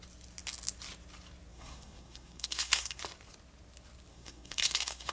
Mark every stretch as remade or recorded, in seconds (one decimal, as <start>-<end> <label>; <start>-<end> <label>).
0.0-1.5 recorded; 1.5-3.0 remade; 3.0-4.1 recorded; 4.1-5.1 remade